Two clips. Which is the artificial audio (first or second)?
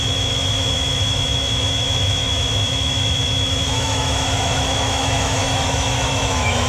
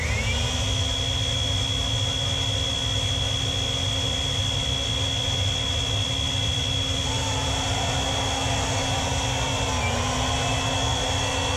first